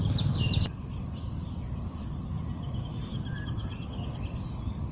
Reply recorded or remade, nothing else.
recorded